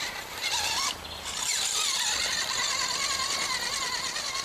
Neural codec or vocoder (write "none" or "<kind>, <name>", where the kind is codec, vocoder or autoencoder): none